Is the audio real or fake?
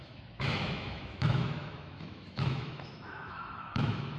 fake